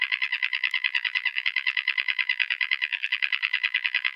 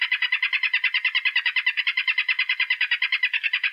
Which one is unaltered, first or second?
second